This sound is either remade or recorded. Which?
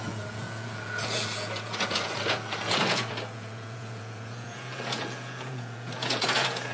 remade